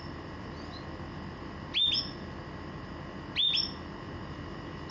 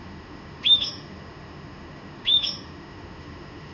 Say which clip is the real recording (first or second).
first